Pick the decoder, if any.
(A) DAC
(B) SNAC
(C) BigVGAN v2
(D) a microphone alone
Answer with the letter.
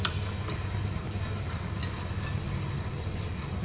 D